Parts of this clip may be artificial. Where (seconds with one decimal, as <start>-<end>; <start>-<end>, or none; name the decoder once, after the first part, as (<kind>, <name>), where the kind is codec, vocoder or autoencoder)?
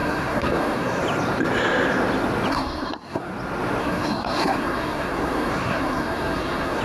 0.0-1.0 (codec, SNAC); 2.5-3.3; 3.8-6.8